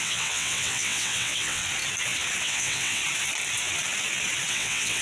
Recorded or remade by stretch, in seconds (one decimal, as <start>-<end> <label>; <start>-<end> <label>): 0.0-1.6 remade; 1.6-2.4 recorded; 2.4-3.0 remade; 3.0-4.5 recorded; 4.5-5.0 remade